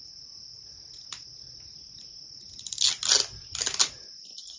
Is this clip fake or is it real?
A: real